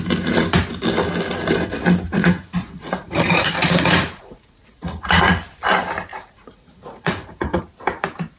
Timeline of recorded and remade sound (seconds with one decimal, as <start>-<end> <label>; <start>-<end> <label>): 0.0-2.1 recorded; 2.1-5.3 remade; 5.3-6.1 recorded; 6.1-7.6 remade; 7.6-8.4 recorded

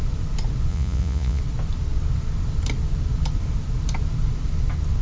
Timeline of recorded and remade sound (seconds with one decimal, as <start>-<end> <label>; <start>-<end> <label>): 0.0-0.7 recorded; 0.7-1.4 remade; 1.4-5.0 recorded